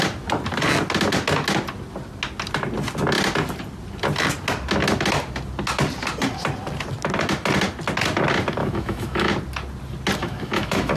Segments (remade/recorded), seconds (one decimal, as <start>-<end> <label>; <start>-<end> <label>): 0.0-8.6 recorded; 8.6-9.3 remade; 9.3-10.2 recorded; 10.2-11.0 remade